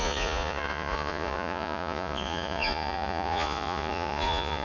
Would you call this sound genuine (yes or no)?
no